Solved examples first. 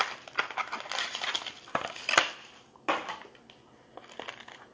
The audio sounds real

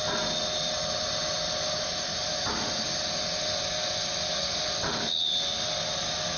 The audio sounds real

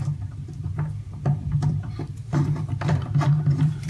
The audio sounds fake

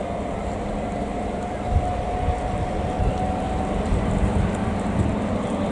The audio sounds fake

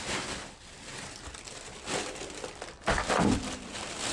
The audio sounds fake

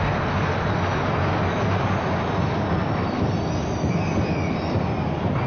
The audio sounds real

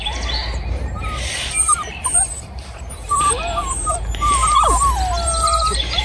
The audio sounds fake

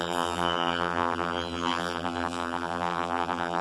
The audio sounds fake